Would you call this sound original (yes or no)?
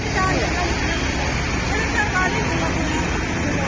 yes